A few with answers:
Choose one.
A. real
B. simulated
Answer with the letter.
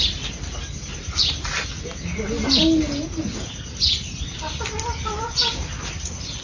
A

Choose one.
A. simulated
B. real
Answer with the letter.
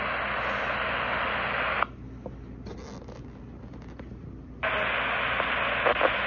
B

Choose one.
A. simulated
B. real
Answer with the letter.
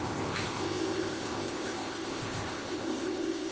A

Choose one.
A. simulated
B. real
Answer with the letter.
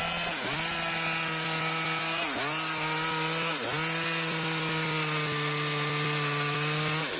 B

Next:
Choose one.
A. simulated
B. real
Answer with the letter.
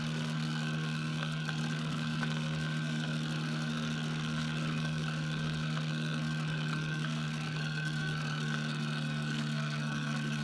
A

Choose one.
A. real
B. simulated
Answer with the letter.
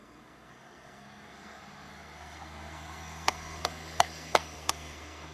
B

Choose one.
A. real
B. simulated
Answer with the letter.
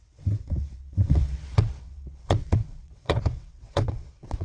B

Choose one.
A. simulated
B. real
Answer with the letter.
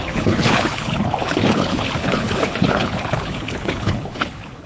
A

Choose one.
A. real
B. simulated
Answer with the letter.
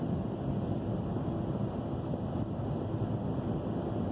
A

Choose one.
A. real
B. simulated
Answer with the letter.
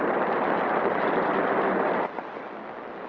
A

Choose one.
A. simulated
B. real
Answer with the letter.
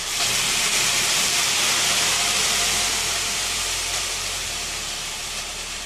A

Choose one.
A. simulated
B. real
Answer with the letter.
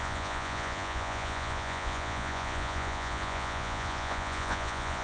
A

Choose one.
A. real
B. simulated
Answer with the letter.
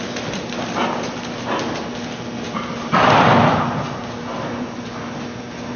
A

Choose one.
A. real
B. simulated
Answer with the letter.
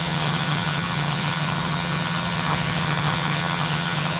B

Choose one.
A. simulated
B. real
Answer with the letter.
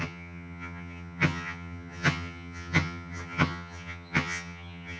A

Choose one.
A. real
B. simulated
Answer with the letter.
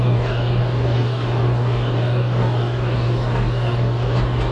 B